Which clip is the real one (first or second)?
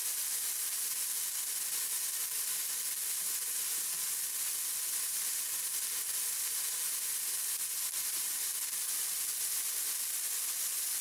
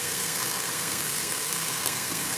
first